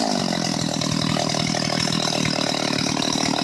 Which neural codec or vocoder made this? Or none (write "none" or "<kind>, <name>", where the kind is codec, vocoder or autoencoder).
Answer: none